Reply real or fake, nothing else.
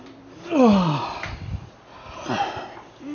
real